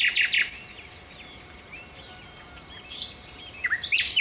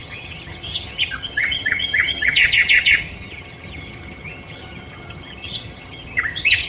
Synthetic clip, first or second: second